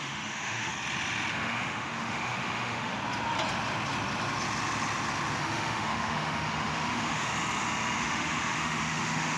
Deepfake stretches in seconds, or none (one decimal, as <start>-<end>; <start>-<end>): 0.0-0.7; 1.3-2.9; 5.4-7.3; 8.0-9.4